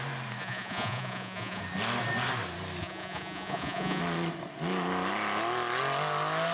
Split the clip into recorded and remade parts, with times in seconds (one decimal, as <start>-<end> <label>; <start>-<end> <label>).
0.0-0.4 recorded; 0.4-1.6 remade; 1.6-2.8 recorded; 2.8-4.0 remade; 4.0-6.5 recorded